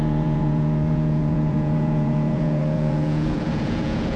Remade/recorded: remade